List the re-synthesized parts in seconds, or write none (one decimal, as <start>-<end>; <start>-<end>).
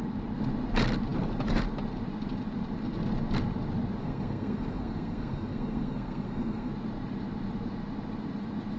4.0-6.7